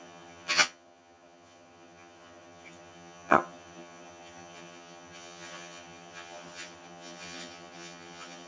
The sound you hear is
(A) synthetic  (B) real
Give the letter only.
A